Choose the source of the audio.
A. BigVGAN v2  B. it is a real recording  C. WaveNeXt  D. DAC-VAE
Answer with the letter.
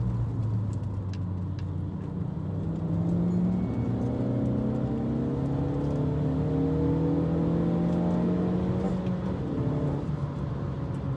B